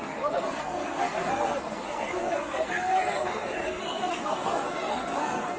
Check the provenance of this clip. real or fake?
fake